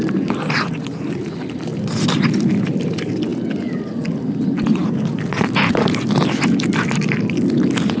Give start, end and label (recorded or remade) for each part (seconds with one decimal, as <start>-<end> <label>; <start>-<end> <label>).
0.0-8.0 recorded